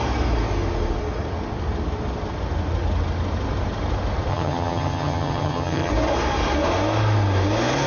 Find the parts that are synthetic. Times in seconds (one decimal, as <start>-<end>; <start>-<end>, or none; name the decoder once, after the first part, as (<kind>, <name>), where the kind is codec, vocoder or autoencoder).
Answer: 4.3-5.9 (vocoder, HiFi-GAN)